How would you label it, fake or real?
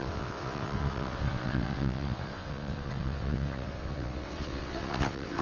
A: fake